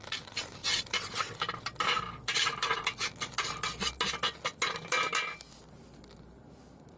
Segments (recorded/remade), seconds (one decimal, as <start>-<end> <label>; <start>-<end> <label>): 0.0-0.6 recorded; 0.6-2.8 remade; 2.8-7.0 recorded